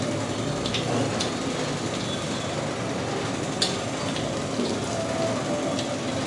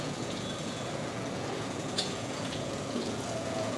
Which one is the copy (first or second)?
second